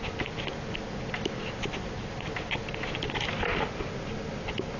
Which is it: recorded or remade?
recorded